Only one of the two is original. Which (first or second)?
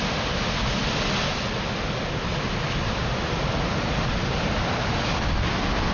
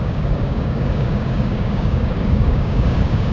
first